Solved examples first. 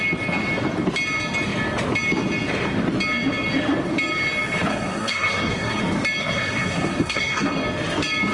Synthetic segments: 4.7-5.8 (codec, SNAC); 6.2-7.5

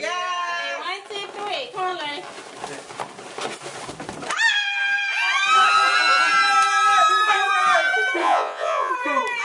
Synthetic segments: 8.2-8.9 (vocoder, Vocos)

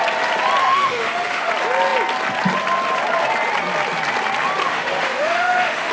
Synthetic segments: 0.6-1.5 (autoencoder, DAC-VAE); 4.6-5.9

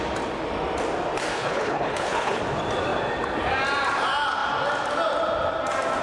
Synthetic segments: 1.3-2.4 (codec, HILCodec)

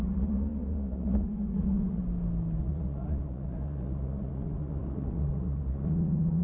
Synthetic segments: 0.0-2.0 (vocoder, Vocos); 2.6-6.4